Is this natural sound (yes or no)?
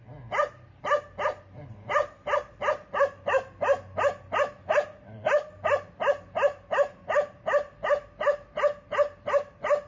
yes